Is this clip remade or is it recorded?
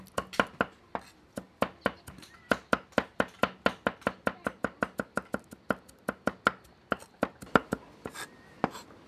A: recorded